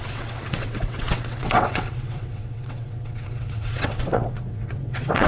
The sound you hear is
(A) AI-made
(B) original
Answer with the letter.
A